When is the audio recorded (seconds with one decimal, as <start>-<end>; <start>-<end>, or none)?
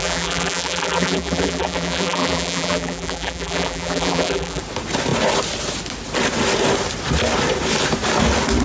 4.6-8.6